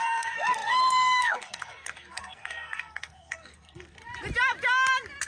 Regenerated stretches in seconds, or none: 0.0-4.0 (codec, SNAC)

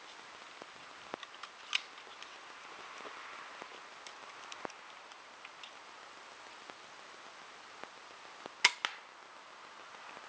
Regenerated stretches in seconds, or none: none